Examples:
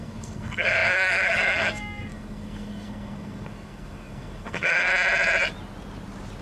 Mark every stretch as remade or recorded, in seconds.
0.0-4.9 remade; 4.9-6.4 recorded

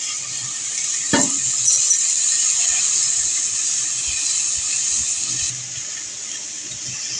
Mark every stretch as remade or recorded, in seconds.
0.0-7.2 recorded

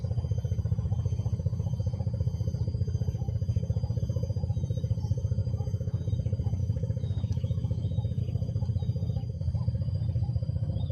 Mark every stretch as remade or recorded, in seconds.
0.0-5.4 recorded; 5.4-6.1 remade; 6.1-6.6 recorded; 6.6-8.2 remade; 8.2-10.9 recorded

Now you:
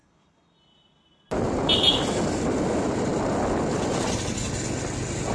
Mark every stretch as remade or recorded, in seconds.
0.0-5.3 recorded

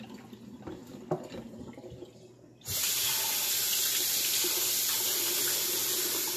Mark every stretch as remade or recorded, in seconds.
0.0-6.4 recorded

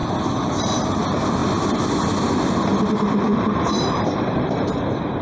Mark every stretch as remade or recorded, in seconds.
0.0-3.3 recorded; 3.3-4.4 remade; 4.4-5.2 recorded

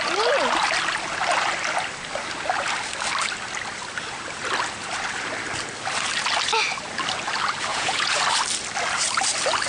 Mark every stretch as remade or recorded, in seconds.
0.0-7.7 recorded; 7.7-8.2 remade; 8.2-9.7 recorded

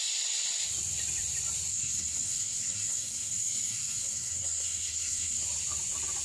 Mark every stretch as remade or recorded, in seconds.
0.0-1.7 recorded; 1.7-5.4 remade; 5.4-6.2 recorded